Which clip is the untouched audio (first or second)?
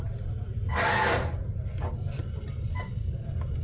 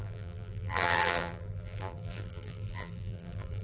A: first